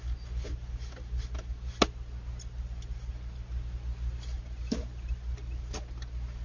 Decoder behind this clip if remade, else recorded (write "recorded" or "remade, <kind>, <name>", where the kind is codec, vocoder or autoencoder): recorded